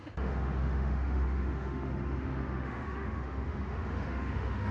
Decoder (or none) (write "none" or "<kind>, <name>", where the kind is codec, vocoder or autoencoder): autoencoder, DAC-VAE